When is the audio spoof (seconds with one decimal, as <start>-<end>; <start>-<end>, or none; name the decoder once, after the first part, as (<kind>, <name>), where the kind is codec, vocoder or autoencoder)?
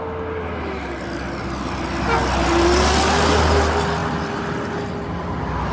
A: none